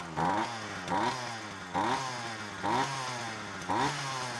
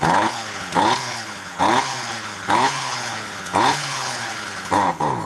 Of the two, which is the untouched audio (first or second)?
first